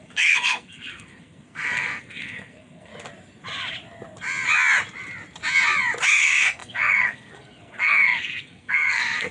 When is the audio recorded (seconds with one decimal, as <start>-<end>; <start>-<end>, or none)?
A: 2.9-6.1